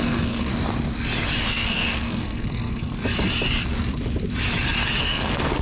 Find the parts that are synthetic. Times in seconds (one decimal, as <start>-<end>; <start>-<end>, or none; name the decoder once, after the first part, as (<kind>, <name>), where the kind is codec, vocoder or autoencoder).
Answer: 0.0-0.5 (codec, SNAC); 1.4-2.9; 5.0-5.6